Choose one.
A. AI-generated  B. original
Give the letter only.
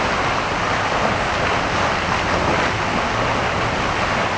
B